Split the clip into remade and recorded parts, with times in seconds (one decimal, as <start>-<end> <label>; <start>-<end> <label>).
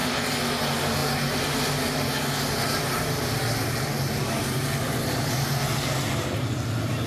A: 0.0-7.1 recorded